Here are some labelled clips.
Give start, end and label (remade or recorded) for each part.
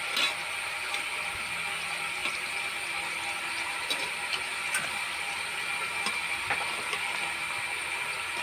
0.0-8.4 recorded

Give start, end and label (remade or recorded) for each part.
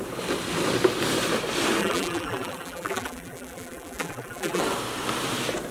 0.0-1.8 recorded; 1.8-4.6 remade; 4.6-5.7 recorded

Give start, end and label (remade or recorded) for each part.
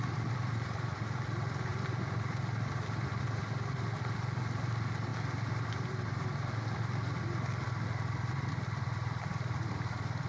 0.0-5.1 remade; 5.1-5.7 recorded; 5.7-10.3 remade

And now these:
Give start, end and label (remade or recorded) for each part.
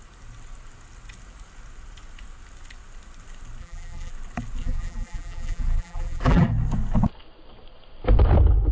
0.0-3.6 recorded; 3.6-4.1 remade; 4.1-4.6 recorded; 4.6-6.5 remade; 6.5-8.7 recorded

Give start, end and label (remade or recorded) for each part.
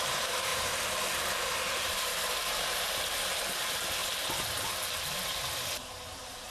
0.0-4.0 remade; 4.0-5.8 recorded; 5.8-6.5 remade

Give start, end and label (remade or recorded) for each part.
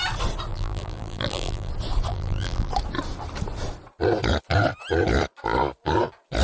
0.0-0.5 recorded; 0.5-1.7 remade; 1.7-2.1 recorded; 2.1-2.7 remade; 2.7-6.4 recorded